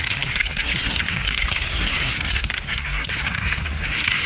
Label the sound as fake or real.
fake